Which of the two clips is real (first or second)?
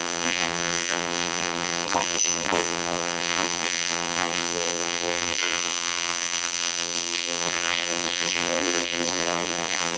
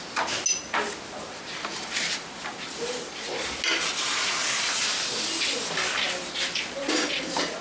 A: second